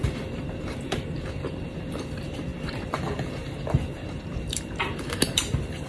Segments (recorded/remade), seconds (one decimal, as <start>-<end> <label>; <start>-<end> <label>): 0.0-5.9 remade